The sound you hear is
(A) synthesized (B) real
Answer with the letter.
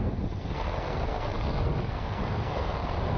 A